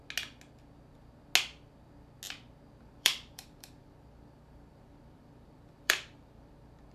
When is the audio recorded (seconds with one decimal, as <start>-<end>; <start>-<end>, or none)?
0.0-2.8